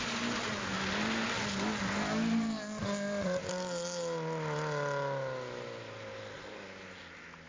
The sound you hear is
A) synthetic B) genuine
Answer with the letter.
B